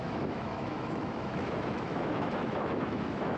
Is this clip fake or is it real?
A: fake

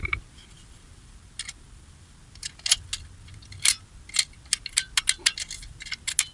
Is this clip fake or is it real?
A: real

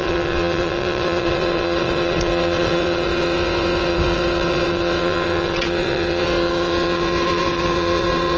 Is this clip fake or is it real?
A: fake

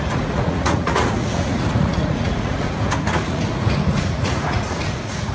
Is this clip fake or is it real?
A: fake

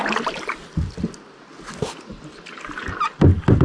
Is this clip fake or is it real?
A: real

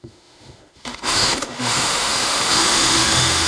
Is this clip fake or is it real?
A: fake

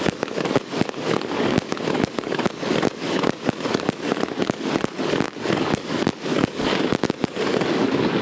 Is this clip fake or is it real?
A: fake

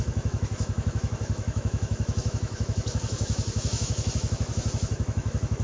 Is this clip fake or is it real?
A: fake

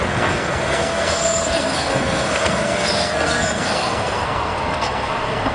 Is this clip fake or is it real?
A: fake